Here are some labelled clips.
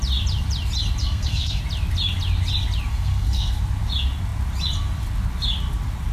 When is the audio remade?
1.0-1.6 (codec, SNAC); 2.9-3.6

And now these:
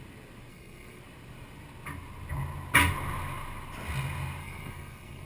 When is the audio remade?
0.5-1.0 (codec, SNAC); 4.4-5.3

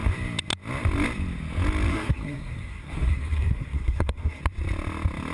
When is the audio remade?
1.9-4.4 (codec, SNAC)

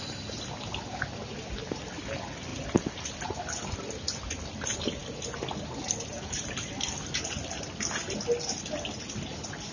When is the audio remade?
none

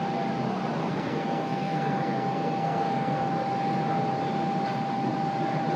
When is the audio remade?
0.8-3.3 (codec, SNAC)

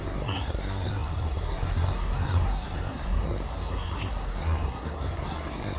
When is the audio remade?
0.0-5.8 (codec, SNAC)